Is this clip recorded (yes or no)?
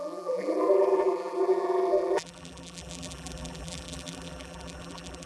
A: no